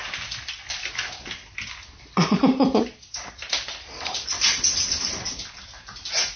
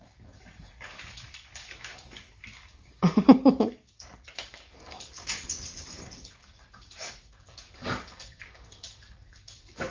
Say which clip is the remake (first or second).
second